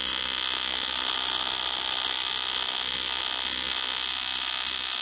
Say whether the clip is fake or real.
real